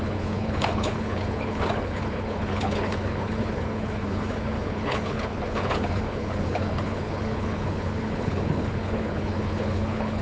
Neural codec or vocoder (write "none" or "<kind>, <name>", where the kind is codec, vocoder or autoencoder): codec, HILCodec